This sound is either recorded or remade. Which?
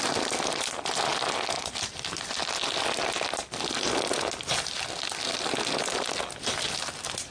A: recorded